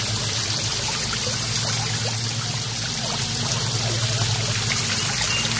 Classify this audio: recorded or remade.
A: recorded